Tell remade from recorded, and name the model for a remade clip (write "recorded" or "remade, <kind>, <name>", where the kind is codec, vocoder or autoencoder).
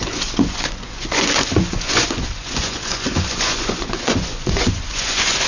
remade, vocoder, Vocos